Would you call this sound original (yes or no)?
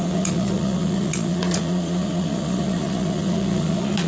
no